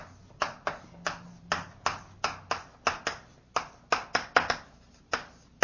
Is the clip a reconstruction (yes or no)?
no